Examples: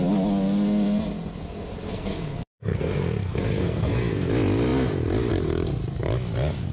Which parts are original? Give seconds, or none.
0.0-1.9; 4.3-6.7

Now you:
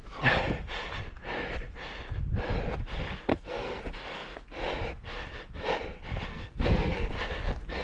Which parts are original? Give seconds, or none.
0.0-3.3; 3.8-6.3; 7.1-7.8

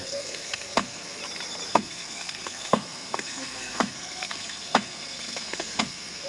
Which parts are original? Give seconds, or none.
1.2-1.7